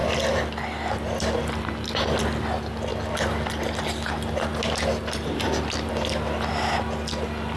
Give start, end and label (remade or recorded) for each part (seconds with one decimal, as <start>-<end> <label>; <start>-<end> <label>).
0.0-7.6 recorded